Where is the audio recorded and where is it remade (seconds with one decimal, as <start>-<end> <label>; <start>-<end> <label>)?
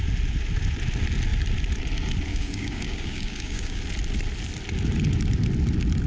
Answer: 0.0-2.3 recorded; 2.3-3.8 remade; 3.8-6.1 recorded